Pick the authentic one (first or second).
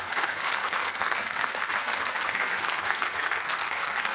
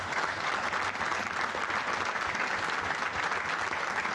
second